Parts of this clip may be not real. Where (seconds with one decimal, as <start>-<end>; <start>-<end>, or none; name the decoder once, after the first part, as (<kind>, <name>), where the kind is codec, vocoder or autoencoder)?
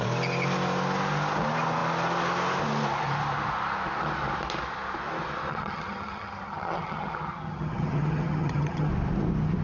5.5-8.9 (vocoder, HiFi-GAN)